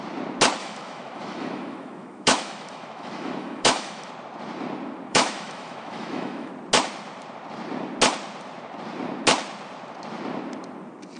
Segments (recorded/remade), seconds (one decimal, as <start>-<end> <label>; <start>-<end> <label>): 0.0-0.6 recorded; 0.6-4.1 remade; 4.1-5.1 recorded; 5.1-6.5 remade; 6.5-11.2 recorded